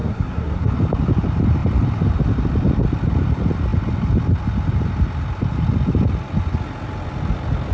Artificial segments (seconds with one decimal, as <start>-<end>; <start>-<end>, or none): 0.0-0.7